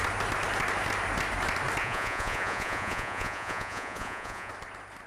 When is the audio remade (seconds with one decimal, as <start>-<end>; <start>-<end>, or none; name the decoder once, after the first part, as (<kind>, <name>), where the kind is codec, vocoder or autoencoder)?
1.8-4.5 (vocoder, Vocos)